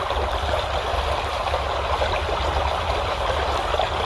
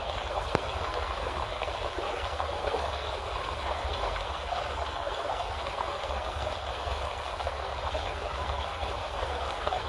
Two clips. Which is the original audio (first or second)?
first